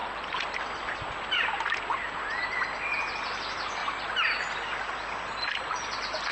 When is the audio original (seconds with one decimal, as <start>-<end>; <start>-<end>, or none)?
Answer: 0.0-6.3